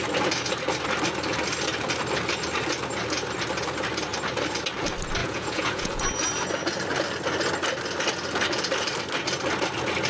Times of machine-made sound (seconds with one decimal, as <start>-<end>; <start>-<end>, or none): 5.2-6.0